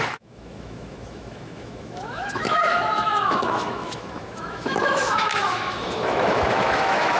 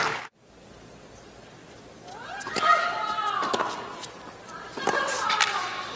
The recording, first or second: second